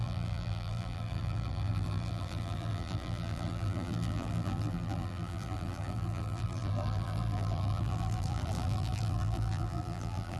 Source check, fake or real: fake